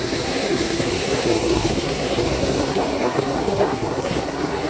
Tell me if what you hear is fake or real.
fake